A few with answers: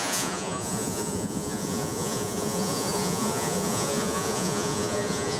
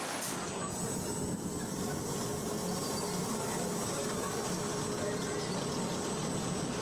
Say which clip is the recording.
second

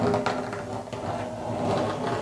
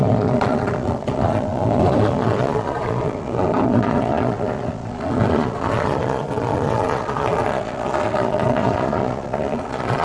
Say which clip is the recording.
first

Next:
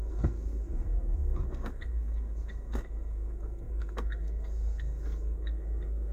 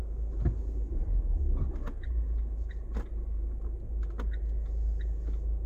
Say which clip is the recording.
second